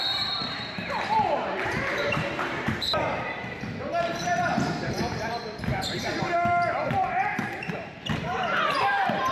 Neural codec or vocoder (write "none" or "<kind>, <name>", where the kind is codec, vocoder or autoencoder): vocoder, BigVGAN v2